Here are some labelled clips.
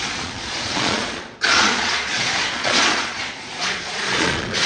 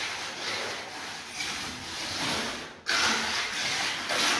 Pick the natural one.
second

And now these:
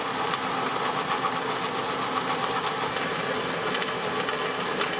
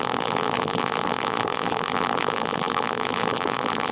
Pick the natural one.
first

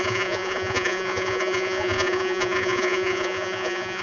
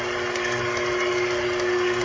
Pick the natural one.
second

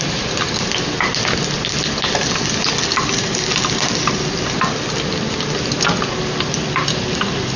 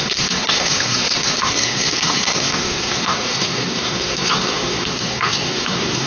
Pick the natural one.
first